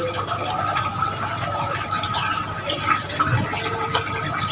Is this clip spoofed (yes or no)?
no